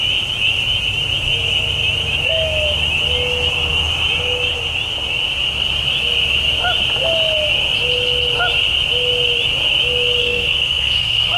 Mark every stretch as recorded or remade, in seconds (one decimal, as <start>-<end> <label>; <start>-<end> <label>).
0.0-10.2 recorded; 10.2-11.4 remade